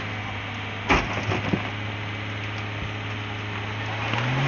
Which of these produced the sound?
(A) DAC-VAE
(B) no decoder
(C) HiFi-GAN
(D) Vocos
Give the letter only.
B